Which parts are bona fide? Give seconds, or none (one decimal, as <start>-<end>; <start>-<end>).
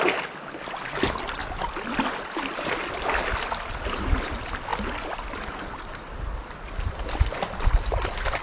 0.0-8.4